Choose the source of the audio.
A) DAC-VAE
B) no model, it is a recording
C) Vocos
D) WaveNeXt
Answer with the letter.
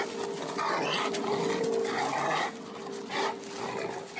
B